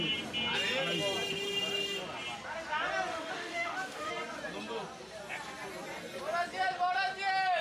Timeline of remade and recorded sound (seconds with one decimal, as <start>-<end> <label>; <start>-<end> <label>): 0.0-3.1 recorded; 3.1-4.1 remade; 4.1-7.6 recorded